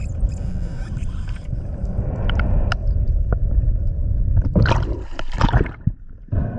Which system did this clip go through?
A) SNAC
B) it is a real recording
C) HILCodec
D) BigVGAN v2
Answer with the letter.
B